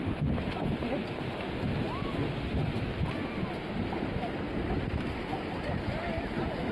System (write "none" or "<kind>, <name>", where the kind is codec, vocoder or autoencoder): none